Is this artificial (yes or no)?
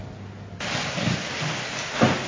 no